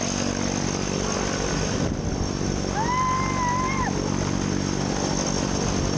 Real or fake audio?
real